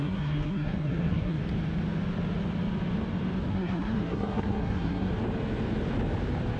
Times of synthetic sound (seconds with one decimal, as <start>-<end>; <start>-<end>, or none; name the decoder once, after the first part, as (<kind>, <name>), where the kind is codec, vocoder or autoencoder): 0.0-1.4 (codec, SNAC); 3.5-5.1